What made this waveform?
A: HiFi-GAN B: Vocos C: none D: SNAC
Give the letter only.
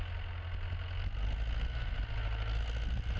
C